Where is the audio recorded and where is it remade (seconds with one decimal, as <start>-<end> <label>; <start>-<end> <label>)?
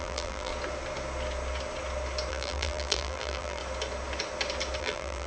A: 0.0-0.5 remade; 0.5-2.3 recorded; 2.3-3.6 remade; 3.6-4.8 recorded; 4.8-5.3 remade